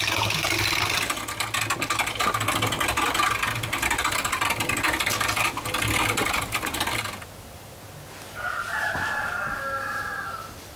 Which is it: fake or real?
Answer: real